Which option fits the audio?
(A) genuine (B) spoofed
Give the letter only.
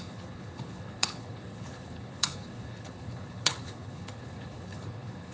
B